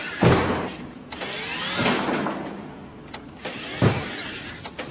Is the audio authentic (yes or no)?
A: yes